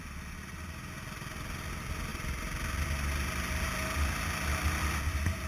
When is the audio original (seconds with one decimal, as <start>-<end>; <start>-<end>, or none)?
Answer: 0.0-5.5